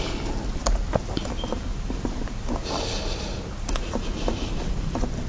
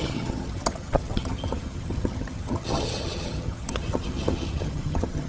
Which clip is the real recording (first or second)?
first